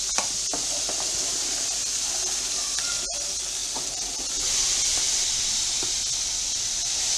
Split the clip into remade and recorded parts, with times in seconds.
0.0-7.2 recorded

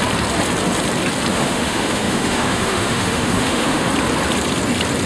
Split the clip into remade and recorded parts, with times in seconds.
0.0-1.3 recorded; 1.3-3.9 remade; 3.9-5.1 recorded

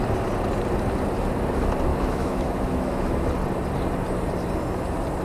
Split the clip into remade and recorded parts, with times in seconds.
0.0-1.9 recorded; 1.9-3.3 remade; 3.3-5.2 recorded